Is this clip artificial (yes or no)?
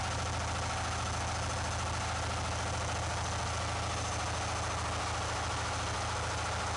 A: no